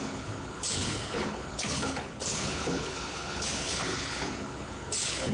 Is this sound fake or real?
fake